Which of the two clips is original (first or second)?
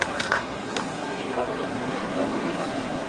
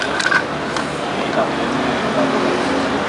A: second